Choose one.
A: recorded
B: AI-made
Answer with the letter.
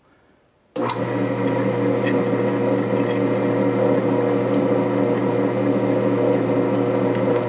A